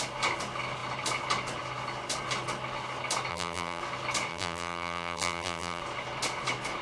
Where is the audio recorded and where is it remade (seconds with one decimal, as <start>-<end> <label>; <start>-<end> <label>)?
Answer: 0.0-3.3 recorded; 3.3-3.8 remade; 3.8-4.3 recorded; 4.3-5.8 remade; 5.8-6.8 recorded